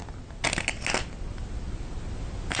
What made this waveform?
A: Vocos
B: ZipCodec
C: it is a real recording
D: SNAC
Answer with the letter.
C